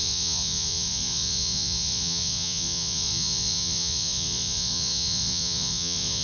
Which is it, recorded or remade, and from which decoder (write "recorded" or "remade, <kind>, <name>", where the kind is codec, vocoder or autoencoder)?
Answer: remade, vocoder, Vocos